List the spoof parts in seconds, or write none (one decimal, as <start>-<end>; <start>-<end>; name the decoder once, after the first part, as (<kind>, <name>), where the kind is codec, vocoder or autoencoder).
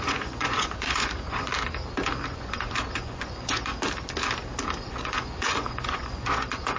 0.0-1.5 (vocoder, Vocos); 2.3-3.7; 4.9-6.8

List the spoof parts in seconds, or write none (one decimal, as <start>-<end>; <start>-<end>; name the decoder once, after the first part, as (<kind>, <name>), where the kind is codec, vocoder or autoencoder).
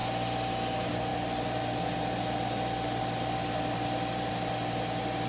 none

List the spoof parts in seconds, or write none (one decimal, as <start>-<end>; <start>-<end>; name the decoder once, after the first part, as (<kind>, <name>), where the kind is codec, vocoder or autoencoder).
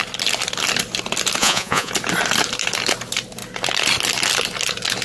1.4-1.9 (vocoder, Vocos)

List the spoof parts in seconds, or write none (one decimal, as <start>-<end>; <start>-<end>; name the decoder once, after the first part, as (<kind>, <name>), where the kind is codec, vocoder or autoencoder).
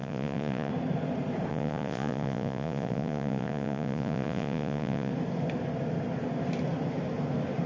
0.0-0.7 (vocoder, Vocos); 1.5-5.1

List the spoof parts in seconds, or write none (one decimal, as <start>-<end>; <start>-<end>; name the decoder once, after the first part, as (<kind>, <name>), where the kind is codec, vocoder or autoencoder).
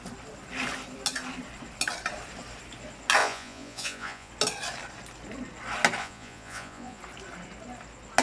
3.2-4.3 (vocoder, Vocos); 6.0-7.0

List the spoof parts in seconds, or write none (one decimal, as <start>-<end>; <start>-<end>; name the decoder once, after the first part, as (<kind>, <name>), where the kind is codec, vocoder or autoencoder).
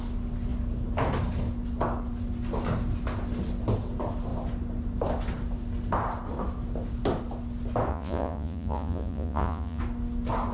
7.9-9.8 (vocoder, Vocos)